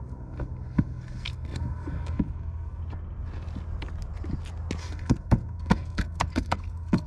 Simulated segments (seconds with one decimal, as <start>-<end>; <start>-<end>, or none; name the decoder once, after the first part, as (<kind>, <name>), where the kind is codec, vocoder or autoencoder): 0.0-2.8 (codec, SNAC); 4.8-7.1